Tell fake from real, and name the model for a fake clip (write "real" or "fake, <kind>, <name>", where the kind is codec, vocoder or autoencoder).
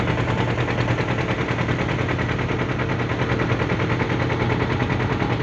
real